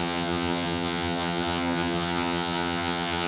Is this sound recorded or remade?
remade